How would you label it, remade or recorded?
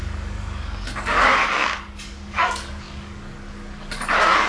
remade